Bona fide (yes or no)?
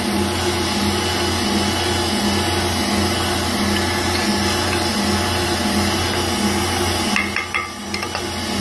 yes